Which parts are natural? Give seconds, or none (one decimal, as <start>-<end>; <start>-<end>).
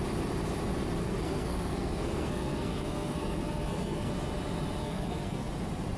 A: 0.0-1.0; 4.1-4.8; 5.5-6.0